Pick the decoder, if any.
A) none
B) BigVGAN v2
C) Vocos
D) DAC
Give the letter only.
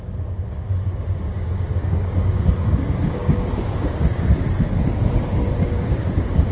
D